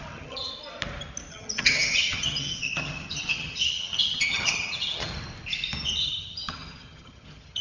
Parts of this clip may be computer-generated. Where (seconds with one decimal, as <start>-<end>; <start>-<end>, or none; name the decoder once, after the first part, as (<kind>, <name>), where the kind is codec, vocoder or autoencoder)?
0.0-0.5 (vocoder, HiFi-GAN); 1.3-5.1; 6.0-7.6